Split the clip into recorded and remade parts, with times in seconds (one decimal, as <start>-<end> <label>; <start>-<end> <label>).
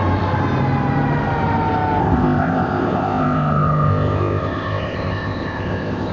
0.0-2.0 recorded; 2.0-6.1 remade